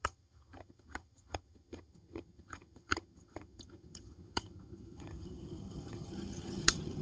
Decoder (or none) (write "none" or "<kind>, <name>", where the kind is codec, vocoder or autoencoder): vocoder, HiFi-GAN